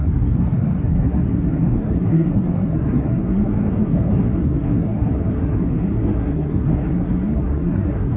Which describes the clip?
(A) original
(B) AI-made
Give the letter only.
B